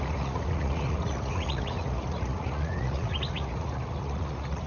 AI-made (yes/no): yes